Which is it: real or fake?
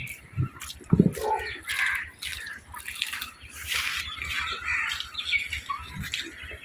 real